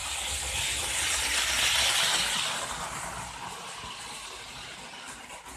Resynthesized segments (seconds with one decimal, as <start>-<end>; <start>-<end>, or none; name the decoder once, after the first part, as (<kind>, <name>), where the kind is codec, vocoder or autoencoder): none

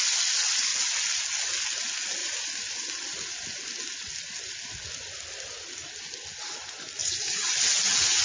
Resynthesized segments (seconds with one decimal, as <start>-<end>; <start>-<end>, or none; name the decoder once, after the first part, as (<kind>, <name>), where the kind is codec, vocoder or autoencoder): 2.2-2.9 (vocoder, BigVGAN v2); 7.0-7.6

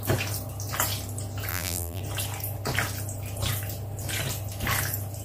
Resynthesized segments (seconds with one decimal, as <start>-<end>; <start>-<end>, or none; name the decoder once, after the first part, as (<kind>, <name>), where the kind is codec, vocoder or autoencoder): 1.5-2.0 (vocoder, BigVGAN v2)